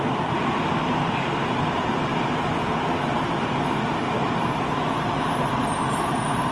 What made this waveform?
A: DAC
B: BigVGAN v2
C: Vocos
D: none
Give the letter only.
B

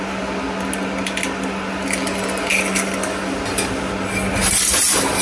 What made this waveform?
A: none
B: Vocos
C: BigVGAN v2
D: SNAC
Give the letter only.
A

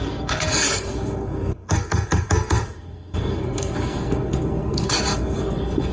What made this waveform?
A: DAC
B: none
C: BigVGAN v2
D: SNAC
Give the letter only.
D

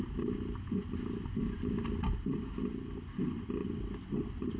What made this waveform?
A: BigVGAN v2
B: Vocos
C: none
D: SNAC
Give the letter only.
C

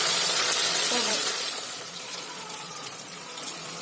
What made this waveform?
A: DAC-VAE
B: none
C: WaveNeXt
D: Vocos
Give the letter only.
D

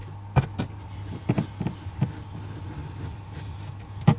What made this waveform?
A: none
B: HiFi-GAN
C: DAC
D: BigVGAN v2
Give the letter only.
A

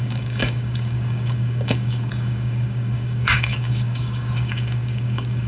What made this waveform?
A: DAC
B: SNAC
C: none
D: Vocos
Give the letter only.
A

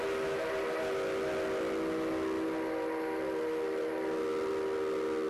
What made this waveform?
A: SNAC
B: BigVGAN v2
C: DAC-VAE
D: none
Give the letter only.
D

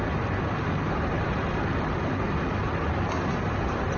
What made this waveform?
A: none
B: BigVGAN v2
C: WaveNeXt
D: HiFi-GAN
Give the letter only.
A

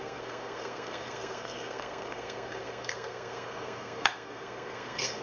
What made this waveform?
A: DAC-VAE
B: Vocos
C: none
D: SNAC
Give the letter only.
D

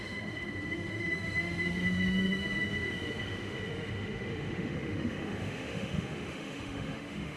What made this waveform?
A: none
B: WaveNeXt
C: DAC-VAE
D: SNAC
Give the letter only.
C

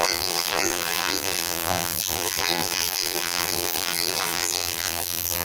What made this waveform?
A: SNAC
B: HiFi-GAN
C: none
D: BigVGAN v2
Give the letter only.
D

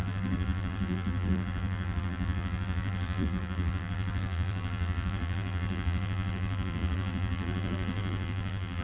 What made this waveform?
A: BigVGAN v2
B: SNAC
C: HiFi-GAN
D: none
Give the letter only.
A